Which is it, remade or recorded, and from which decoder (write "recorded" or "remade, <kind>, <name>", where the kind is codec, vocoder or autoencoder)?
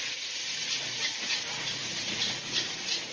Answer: remade, vocoder, Vocos